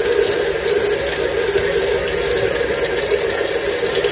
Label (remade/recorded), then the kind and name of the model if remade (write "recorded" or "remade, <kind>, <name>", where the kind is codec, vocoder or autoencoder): recorded